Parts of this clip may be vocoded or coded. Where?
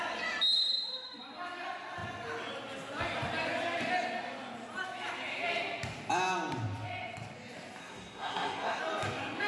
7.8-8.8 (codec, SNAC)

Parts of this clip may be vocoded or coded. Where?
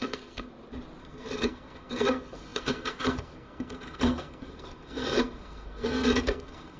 0.0-0.5 (codec, SNAC); 1.0-6.8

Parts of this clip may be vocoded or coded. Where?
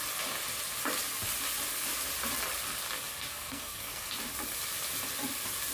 3.3-4.1 (codec, SNAC)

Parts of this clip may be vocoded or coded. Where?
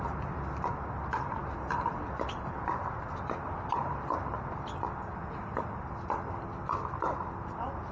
none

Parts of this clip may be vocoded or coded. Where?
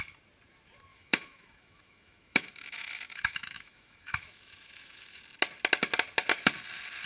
0.9-5.2 (autoencoder, DAC-VAE)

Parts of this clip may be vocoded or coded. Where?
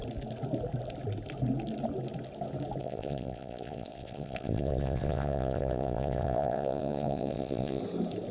2.8-7.8 (vocoder, WaveNeXt)